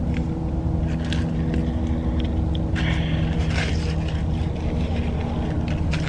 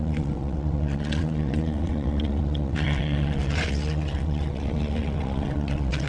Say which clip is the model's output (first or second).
second